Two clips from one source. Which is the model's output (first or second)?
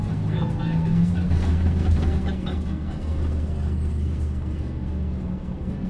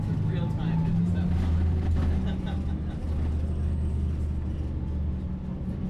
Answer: first